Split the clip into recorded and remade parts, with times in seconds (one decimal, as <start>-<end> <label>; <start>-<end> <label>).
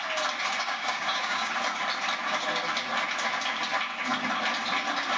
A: 0.0-0.5 recorded; 0.5-1.5 remade; 1.5-5.2 recorded